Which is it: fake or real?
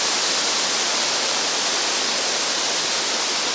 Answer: real